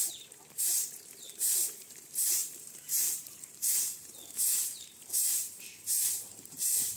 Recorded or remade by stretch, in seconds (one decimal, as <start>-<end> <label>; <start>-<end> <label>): 0.0-7.0 remade